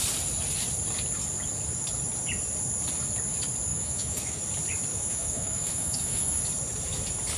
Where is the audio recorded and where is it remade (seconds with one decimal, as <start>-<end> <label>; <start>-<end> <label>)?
0.0-3.7 recorded; 3.7-4.4 remade; 4.4-4.9 recorded; 4.9-6.4 remade; 6.4-7.4 recorded